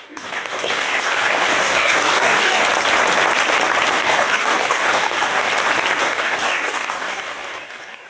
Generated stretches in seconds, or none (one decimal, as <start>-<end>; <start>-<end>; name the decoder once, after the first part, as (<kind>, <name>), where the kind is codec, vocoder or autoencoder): 0.0-2.6 (codec, DAC); 3.9-5.5; 6.0-8.1